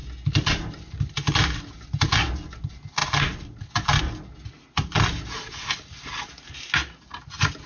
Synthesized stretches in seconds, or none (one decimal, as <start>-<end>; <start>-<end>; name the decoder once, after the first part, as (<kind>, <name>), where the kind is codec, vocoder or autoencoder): none